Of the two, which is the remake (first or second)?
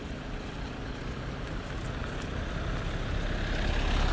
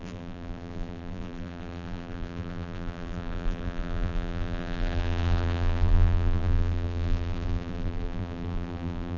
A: second